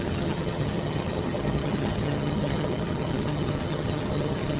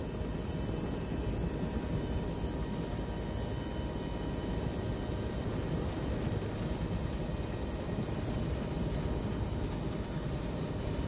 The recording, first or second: second